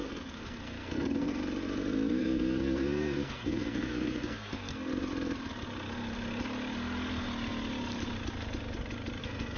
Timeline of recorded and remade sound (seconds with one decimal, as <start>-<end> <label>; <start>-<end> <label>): 0.0-1.4 remade; 1.4-2.2 recorded; 2.2-4.9 remade; 4.9-9.2 recorded; 9.2-9.6 remade